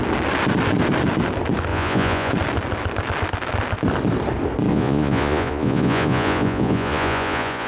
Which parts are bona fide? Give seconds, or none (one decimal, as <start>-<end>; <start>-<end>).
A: 0.0-1.7; 2.3-4.7